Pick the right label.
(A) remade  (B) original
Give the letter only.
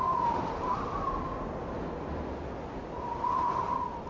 B